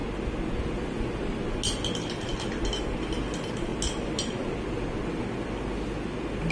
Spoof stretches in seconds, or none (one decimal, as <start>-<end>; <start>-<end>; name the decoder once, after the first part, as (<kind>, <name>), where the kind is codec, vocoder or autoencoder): none